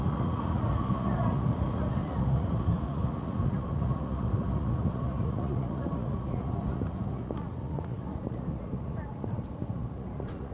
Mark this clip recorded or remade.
remade